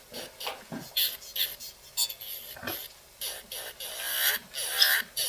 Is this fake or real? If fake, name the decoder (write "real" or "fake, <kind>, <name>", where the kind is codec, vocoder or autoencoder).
real